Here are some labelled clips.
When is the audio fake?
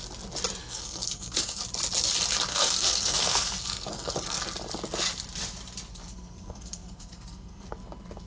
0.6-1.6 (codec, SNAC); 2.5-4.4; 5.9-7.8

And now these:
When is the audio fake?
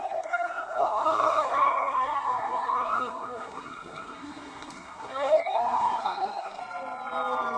0.0-6.6 (codec, SNAC)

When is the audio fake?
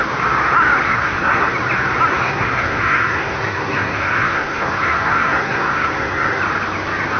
0.8-1.5 (codec, SNAC); 2.1-6.4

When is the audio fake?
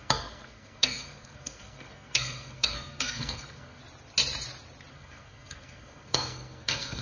0.0-3.8 (codec, SNAC); 4.9-7.0